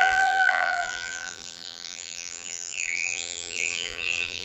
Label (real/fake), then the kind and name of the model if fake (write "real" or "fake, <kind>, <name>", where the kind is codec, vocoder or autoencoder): fake, vocoder, BigVGAN v2